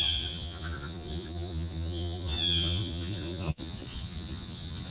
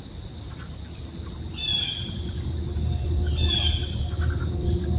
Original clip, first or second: second